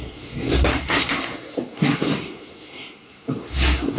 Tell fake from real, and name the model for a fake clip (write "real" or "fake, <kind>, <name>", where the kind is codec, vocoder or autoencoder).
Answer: fake, codec, SNAC